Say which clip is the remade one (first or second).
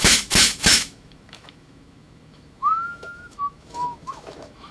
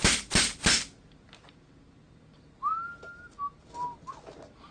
first